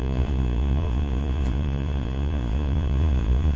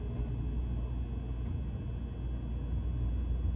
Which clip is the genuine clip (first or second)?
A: second